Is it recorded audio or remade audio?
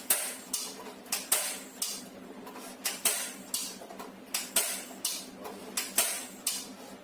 recorded